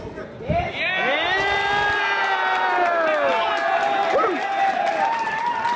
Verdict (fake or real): real